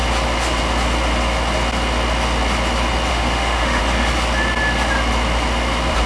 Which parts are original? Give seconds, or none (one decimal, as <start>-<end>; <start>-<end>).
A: 0.0-3.1; 3.8-6.1